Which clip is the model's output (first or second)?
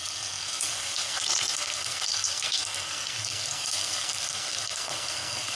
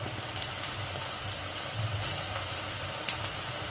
first